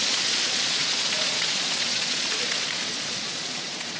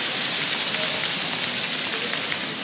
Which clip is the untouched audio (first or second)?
second